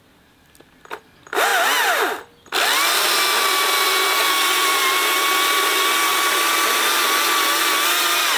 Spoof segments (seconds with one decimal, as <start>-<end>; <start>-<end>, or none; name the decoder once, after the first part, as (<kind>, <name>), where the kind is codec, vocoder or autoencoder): none